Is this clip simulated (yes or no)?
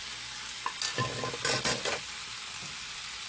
no